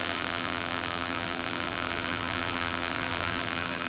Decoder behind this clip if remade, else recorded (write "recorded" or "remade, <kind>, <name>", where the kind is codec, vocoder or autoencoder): remade, vocoder, BigVGAN v2